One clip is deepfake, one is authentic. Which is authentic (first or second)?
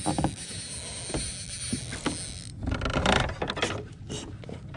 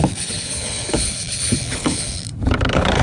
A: first